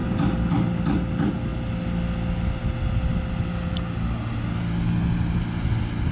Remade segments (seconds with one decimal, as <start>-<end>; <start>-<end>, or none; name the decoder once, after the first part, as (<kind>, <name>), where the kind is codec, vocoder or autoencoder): none